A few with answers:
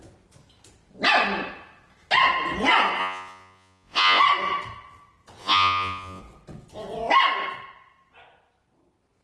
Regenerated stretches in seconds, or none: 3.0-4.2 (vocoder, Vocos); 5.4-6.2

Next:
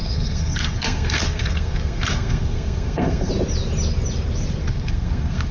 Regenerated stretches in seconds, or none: 0.0-3.3 (codec, SNAC); 4.6-5.5

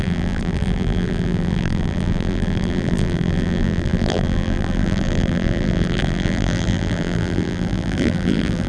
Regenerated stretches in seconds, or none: 0.0-8.7 (vocoder, BigVGAN v2)

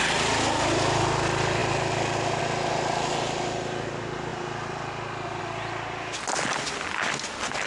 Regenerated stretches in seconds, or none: none

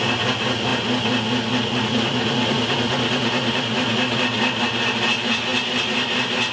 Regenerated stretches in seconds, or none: none